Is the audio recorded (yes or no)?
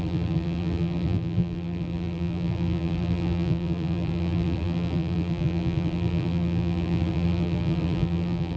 no